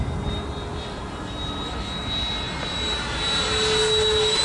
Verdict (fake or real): real